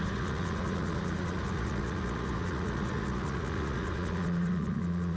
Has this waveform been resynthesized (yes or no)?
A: yes